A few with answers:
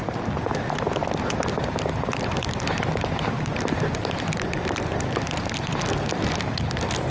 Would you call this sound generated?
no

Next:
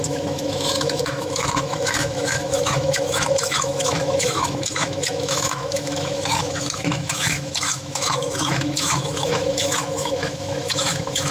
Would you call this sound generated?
yes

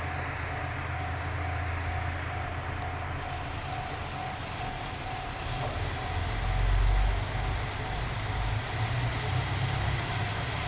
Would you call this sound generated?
no